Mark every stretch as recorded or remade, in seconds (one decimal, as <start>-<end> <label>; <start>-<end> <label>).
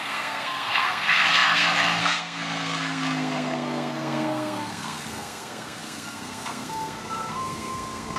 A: 0.0-8.2 remade